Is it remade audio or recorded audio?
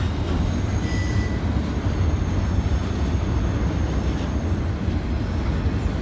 recorded